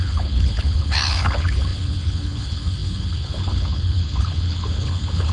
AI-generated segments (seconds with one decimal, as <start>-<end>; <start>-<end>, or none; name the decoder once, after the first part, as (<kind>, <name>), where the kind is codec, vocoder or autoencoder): 0.0-5.3 (codec, HILCodec)